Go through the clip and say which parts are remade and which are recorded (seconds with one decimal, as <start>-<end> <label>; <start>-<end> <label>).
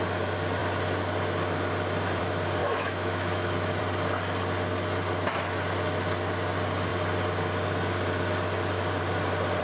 0.0-2.6 recorded; 2.6-3.8 remade; 3.8-9.6 recorded